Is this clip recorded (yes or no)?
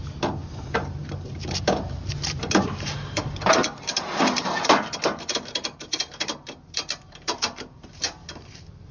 no